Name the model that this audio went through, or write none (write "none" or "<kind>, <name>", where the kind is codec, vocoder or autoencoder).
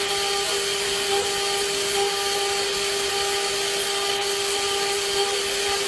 none